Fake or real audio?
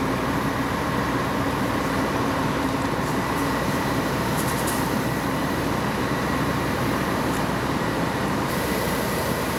fake